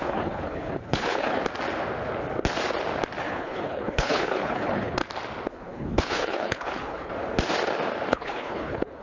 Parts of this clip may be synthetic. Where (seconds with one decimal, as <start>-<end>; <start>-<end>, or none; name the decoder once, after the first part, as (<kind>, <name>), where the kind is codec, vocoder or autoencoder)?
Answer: 0.0-1.4 (codec, HILCodec); 3.2-5.0; 5.5-7.1; 8.1-9.0

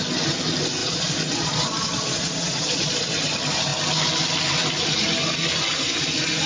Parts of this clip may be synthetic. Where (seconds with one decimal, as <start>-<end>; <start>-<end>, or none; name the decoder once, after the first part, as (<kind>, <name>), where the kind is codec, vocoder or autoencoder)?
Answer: 0.8-3.1 (vocoder, Vocos)

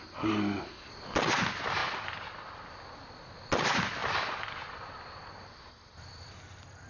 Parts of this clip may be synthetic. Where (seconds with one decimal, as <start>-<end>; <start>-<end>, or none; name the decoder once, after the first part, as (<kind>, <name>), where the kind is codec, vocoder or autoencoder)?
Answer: none

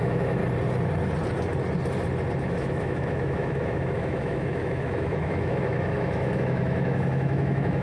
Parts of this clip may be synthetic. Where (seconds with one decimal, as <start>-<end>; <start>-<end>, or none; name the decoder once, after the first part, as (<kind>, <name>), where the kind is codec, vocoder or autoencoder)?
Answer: 0.0-0.4 (autoencoder, DAC-VAE); 2.4-7.8